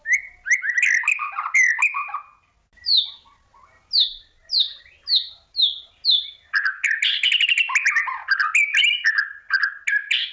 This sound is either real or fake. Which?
real